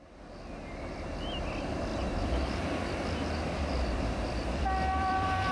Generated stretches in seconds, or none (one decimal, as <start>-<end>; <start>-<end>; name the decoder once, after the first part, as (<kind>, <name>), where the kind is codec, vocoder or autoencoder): 1.9-5.5 (vocoder, BigVGAN v2)